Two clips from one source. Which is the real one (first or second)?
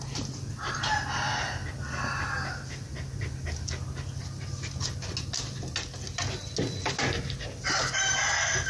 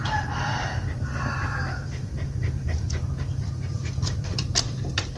first